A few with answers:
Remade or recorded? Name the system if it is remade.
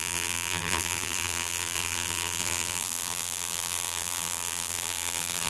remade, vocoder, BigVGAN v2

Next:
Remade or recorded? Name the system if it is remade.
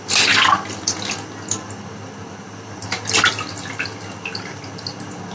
recorded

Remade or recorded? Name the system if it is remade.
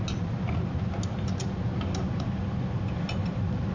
recorded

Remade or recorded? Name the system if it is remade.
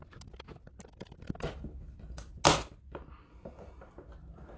recorded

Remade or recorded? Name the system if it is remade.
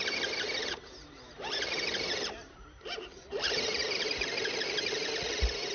remade, vocoder, BigVGAN v2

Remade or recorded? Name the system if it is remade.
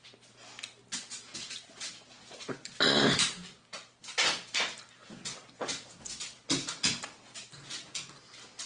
recorded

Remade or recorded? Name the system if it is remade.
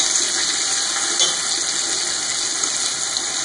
recorded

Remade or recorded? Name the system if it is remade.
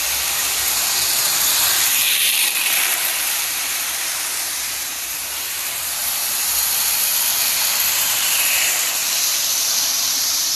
remade, vocoder, BigVGAN v2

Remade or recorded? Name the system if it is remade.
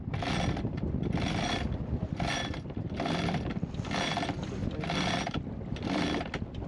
recorded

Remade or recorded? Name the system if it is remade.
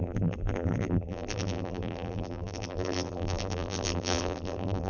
remade, vocoder, BigVGAN v2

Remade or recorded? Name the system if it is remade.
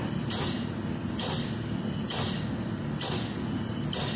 recorded